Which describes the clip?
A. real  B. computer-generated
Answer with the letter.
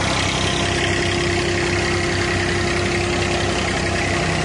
A